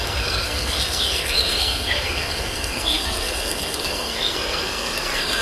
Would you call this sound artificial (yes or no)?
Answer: yes